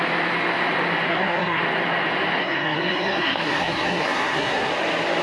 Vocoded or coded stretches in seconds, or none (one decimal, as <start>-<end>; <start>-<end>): 1.1-1.6; 2.4-4.7